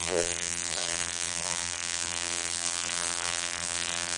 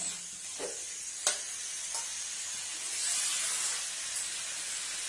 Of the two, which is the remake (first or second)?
first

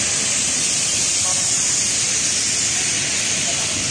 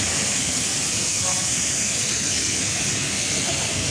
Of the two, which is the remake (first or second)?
second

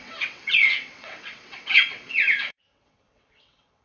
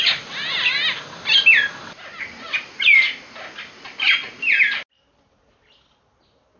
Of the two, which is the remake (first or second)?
first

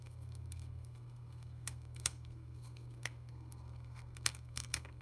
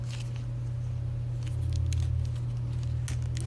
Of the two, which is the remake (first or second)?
first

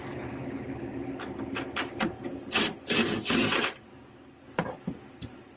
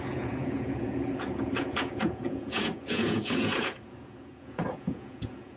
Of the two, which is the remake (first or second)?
second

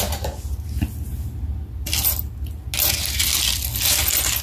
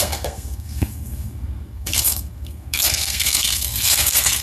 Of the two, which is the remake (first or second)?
second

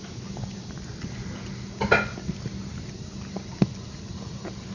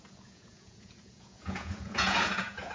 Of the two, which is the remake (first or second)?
second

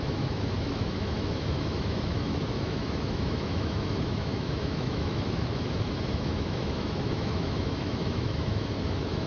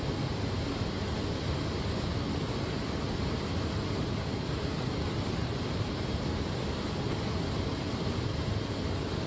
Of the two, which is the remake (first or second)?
first